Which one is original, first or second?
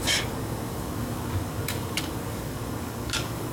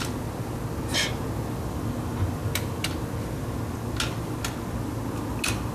second